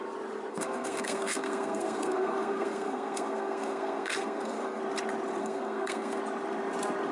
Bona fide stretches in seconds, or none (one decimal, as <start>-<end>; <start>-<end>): 0.0-0.5; 4.8-5.4; 6.2-7.1